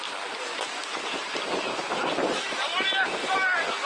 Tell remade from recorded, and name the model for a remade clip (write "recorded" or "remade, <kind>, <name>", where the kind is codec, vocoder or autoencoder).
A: recorded